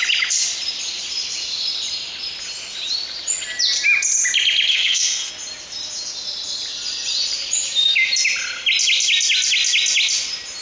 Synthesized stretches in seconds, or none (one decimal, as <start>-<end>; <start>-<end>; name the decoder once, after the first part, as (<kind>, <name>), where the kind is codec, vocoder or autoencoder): 4.7-5.3 (codec, SNAC)